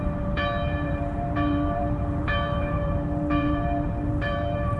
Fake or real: fake